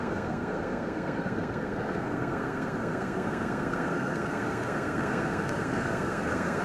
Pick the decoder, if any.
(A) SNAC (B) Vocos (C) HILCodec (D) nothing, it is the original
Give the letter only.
A